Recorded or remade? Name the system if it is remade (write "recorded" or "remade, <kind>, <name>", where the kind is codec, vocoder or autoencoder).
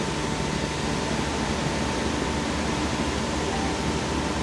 recorded